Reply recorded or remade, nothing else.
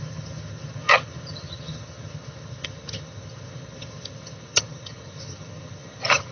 remade